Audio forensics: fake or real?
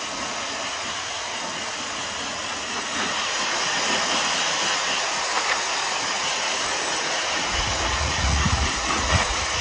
fake